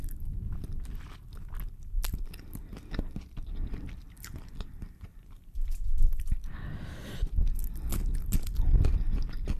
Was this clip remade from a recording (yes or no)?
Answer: no